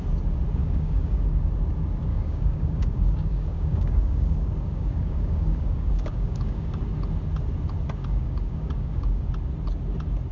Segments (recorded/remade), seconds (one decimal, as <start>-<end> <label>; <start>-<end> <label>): 0.0-0.6 recorded; 0.6-1.4 remade; 1.4-2.1 recorded; 2.1-6.8 remade; 6.8-8.0 recorded; 8.0-9.3 remade; 9.3-10.3 recorded